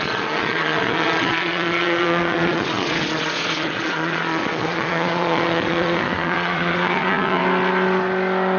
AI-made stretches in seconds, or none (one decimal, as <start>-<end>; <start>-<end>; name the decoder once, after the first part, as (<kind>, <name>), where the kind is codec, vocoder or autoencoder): 0.0-7.4 (vocoder, Vocos)